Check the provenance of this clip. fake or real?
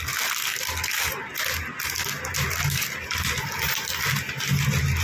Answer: real